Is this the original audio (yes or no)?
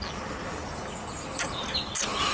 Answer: yes